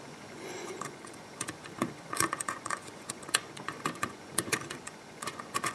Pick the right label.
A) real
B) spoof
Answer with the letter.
B